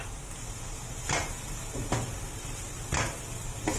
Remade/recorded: recorded